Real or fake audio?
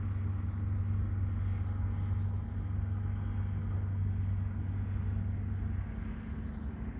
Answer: real